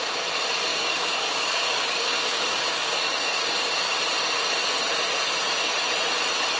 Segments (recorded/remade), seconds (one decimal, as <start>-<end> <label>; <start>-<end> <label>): 0.0-0.7 recorded; 0.7-4.0 remade; 4.0-6.6 recorded